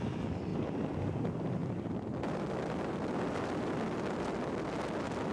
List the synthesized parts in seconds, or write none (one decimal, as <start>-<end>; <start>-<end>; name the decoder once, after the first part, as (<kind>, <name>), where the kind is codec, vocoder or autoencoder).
none